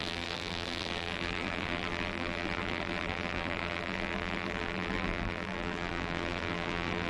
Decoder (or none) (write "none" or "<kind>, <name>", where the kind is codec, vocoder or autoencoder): vocoder, BigVGAN v2